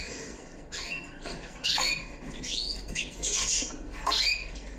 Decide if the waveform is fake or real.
fake